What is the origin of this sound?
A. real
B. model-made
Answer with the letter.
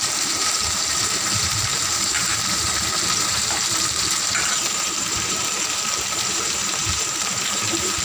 B